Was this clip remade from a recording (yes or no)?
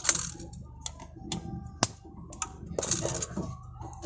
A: no